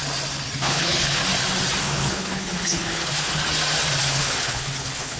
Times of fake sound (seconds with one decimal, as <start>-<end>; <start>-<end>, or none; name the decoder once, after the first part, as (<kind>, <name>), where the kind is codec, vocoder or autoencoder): 0.6-1.2 (codec, HILCodec); 1.8-3.4; 4.0-5.2